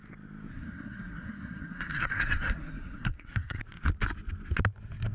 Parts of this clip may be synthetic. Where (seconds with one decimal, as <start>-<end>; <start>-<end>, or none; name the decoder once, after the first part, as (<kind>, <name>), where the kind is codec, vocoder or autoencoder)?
0.5-3.6 (codec, SNAC)